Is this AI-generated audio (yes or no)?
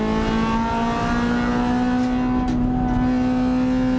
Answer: no